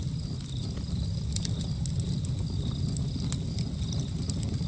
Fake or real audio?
real